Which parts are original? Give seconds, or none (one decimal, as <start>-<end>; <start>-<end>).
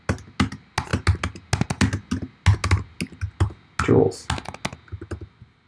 0.0-5.7